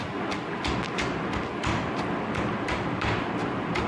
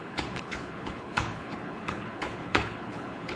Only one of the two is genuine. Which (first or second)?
first